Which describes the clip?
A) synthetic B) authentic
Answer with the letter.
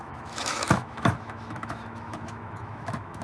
A